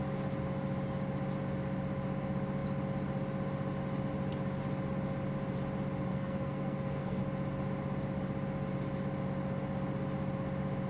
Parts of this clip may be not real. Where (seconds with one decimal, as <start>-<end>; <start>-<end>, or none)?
6.1-7.2